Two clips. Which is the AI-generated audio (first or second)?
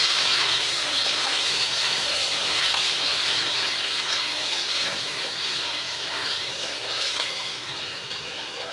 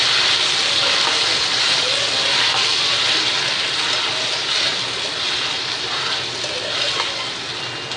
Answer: first